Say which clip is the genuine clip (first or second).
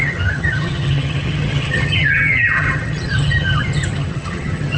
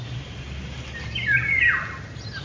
second